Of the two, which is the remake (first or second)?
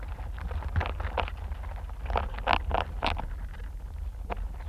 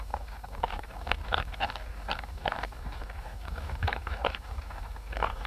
second